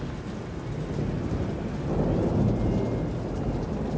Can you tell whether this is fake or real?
real